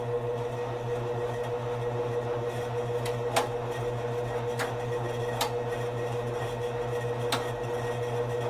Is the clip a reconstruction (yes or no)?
no